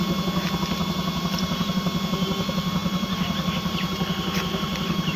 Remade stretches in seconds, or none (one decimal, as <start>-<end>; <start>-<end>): 0.8-1.7; 2.8-5.2